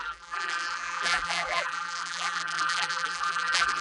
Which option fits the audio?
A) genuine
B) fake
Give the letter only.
B